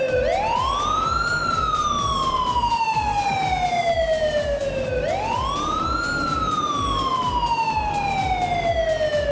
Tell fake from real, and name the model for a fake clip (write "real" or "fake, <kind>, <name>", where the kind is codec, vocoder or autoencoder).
real